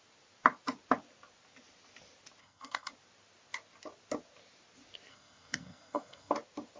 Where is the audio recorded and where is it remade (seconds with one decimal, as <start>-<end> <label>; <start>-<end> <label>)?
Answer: 0.0-2.4 recorded; 2.4-2.9 remade; 2.9-5.1 recorded; 5.1-6.3 remade; 6.3-6.8 recorded